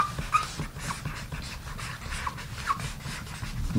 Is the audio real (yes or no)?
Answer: yes